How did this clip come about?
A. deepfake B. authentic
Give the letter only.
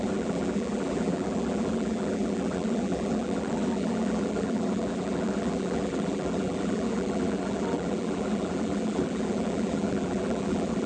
A